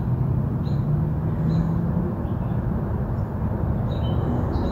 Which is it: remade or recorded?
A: recorded